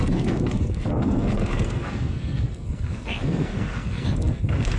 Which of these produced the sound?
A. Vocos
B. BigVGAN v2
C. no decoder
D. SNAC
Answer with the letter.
D